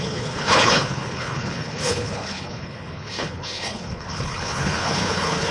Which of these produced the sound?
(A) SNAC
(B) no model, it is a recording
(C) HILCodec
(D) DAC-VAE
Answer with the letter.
C